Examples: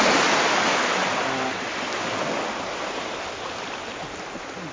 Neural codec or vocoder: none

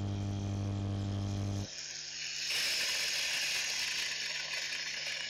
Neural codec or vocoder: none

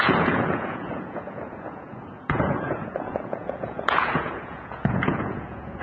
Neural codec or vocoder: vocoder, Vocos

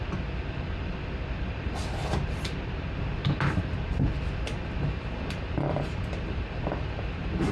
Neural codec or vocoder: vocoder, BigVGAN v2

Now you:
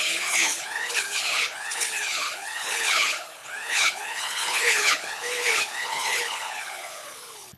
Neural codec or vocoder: codec, HILCodec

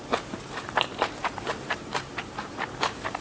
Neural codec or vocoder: vocoder, BigVGAN v2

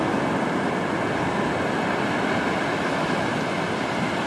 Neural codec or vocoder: none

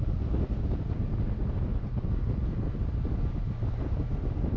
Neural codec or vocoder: none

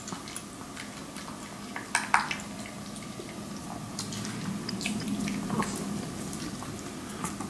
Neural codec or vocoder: none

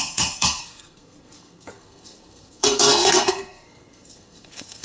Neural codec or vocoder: codec, SNAC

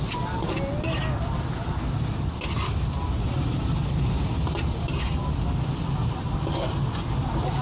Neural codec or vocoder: none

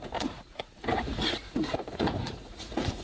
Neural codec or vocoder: vocoder, Vocos